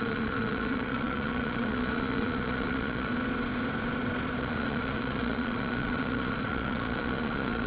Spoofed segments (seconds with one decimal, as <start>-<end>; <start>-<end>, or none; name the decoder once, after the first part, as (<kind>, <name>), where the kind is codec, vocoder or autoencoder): 0.0-3.1 (vocoder, Vocos); 4.4-7.7